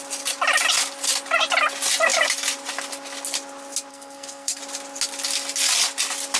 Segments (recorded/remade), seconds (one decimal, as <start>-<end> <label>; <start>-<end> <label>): 0.0-3.9 recorded; 3.9-4.6 remade; 4.6-6.4 recorded

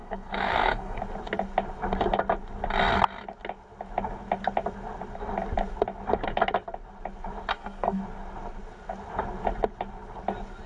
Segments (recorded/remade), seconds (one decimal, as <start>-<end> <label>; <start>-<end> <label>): 0.0-1.0 remade; 1.0-7.5 recorded; 7.5-8.0 remade; 8.0-10.7 recorded

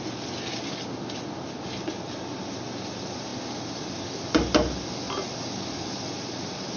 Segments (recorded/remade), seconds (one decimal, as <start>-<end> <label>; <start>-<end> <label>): 0.0-6.8 recorded

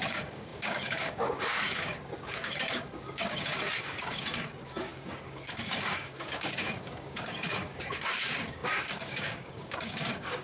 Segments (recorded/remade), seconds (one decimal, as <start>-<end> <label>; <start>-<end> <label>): 0.0-10.4 remade

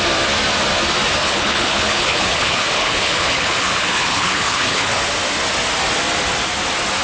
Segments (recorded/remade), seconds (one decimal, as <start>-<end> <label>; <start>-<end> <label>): 0.0-1.2 recorded; 1.2-5.0 remade; 5.0-7.0 recorded